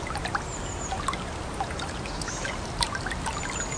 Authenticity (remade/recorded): recorded